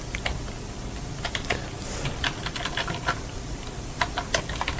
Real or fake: real